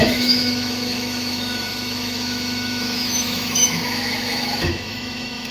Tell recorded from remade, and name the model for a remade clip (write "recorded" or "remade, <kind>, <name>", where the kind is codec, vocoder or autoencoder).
remade, autoencoder, DAC-VAE